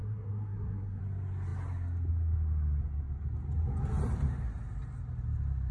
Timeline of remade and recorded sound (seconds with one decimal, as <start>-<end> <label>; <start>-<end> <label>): 0.0-1.0 remade; 1.0-5.7 recorded